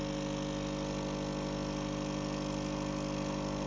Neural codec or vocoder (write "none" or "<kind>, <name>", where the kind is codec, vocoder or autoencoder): none